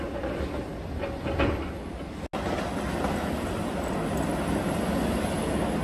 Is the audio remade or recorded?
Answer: recorded